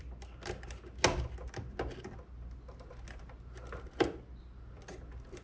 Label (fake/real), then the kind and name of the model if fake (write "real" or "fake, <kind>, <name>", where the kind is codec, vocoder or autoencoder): real